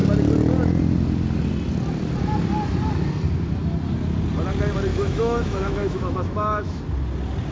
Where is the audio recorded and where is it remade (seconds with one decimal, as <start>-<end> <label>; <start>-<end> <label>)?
0.0-4.9 recorded; 4.9-6.8 remade; 6.8-7.5 recorded